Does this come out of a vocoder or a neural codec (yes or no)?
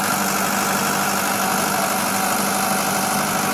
no